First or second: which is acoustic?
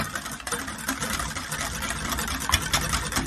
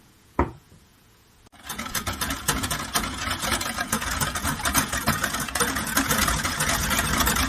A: first